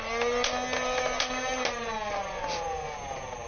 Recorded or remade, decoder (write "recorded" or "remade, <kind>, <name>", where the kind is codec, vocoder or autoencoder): recorded